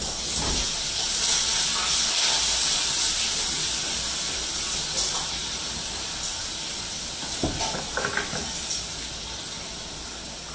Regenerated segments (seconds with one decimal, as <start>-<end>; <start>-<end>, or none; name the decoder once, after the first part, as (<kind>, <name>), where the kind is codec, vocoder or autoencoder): none